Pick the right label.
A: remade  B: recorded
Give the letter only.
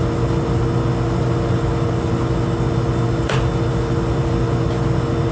B